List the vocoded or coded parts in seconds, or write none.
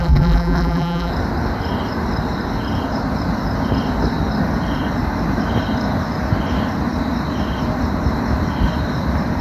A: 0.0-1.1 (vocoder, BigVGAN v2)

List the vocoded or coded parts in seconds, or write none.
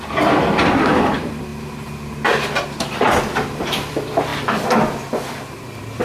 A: 0.0-1.5 (vocoder, BigVGAN v2); 2.9-4.3; 5.6-6.0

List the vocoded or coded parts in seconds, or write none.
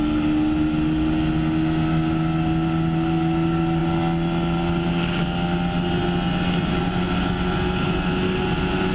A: none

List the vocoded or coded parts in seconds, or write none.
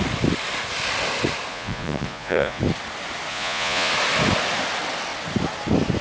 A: 1.5-2.6 (vocoder, Vocos); 3.3-3.9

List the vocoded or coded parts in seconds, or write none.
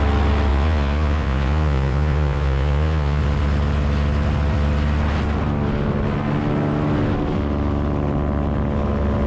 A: 0.5-3.2 (vocoder, Vocos)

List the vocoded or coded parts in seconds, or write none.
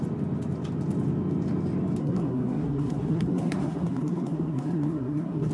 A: 2.0-5.5 (codec, SNAC)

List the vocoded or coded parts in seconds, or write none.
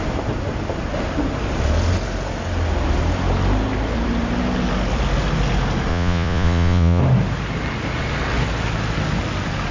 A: 5.9-7.0 (vocoder, Vocos)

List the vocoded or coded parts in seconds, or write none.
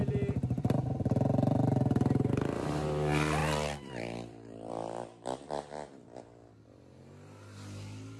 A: 0.0-2.3 (vocoder, BigVGAN v2); 3.4-4.7